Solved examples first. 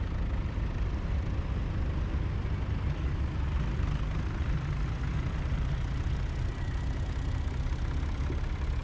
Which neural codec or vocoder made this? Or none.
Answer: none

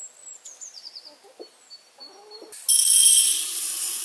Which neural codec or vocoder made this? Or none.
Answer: none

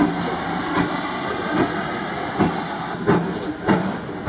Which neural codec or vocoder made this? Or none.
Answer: none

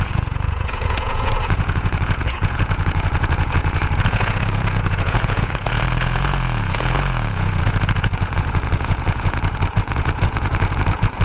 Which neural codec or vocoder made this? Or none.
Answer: vocoder, Vocos